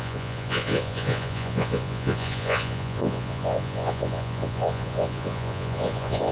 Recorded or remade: remade